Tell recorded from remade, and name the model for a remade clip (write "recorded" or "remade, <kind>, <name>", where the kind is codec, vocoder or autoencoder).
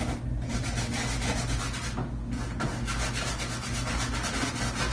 recorded